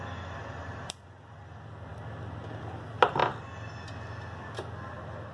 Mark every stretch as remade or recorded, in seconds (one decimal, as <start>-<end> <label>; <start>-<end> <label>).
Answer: 0.0-0.4 recorded; 0.4-1.4 remade; 1.4-5.3 recorded